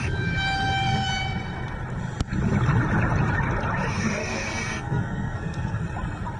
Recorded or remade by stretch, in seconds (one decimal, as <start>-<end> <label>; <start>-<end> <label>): 0.0-4.2 recorded; 4.2-5.8 remade; 5.8-6.4 recorded